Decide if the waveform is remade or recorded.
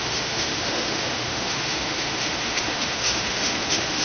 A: remade